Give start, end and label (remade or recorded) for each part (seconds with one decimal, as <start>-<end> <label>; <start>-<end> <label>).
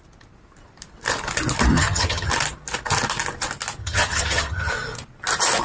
0.0-1.7 recorded; 1.7-2.3 remade; 2.3-3.8 recorded; 3.8-4.7 remade; 4.7-5.6 recorded